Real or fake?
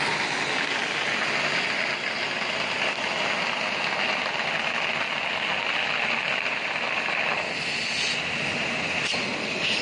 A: real